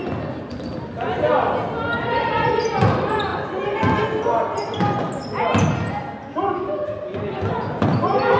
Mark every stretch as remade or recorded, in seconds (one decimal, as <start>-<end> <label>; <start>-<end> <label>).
0.0-8.4 recorded